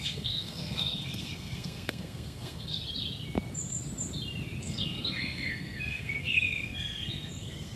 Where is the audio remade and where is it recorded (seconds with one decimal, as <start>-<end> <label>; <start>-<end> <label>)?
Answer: 0.0-2.8 remade; 2.8-4.6 recorded; 4.6-7.8 remade